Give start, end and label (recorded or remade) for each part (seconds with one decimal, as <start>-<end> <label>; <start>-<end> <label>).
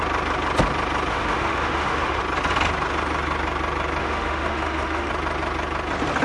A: 0.0-1.1 recorded; 1.1-2.2 remade; 2.2-4.0 recorded; 4.0-5.1 remade; 5.1-6.2 recorded